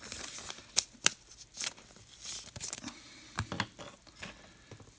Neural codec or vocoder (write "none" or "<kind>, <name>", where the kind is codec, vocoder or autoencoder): none